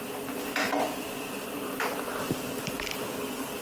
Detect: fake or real real